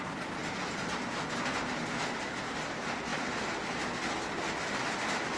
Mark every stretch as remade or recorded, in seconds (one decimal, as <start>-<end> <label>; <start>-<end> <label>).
0.0-5.4 recorded